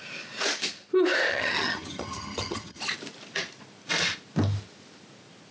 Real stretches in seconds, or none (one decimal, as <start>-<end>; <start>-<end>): 0.0-1.3; 2.8-5.5